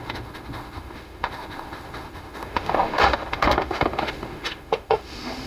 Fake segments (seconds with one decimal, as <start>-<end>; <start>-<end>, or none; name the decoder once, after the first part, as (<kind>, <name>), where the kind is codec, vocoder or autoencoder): 0.0-5.5 (autoencoder, DAC-VAE)